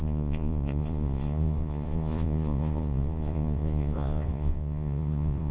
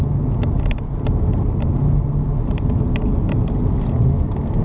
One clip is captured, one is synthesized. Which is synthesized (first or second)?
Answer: first